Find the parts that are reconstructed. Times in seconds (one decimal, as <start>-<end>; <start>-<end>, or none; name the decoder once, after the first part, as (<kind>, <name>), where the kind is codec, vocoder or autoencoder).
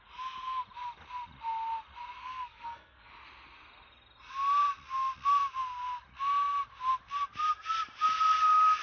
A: 2.2-3.1 (codec, SNAC)